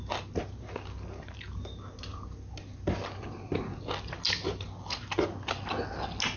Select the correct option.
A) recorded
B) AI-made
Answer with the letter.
A